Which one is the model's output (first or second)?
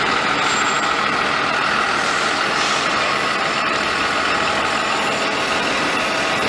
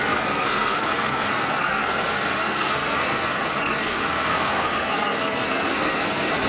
second